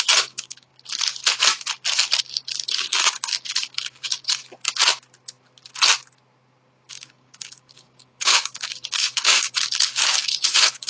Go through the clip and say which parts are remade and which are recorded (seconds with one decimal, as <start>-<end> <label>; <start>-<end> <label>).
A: 0.0-0.7 remade; 0.7-2.2 recorded; 2.2-4.4 remade; 4.4-6.9 recorded; 6.9-10.9 remade